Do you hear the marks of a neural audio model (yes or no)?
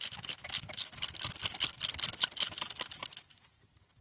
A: no